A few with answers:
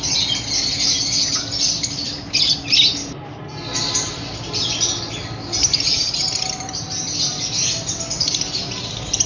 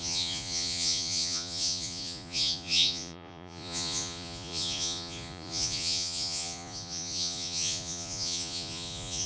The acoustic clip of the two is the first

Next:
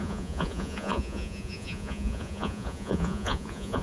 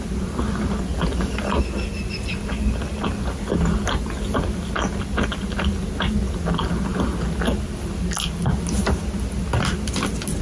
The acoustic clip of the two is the second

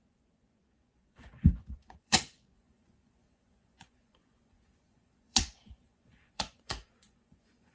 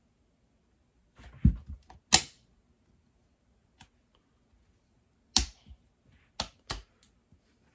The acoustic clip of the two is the second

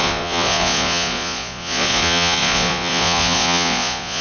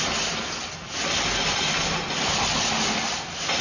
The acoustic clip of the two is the second